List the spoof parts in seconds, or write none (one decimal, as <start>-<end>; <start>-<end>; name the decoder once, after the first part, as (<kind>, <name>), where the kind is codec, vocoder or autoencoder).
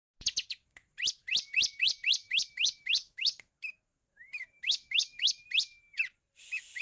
2.2-5.4 (autoencoder, DAC-VAE)